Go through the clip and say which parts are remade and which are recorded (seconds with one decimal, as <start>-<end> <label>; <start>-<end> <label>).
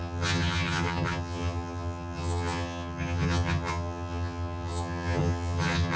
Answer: 0.0-6.0 remade